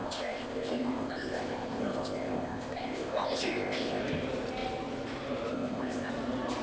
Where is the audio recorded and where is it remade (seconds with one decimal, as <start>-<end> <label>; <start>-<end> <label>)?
0.0-4.0 remade; 4.0-5.5 recorded; 5.5-6.1 remade; 6.1-6.6 recorded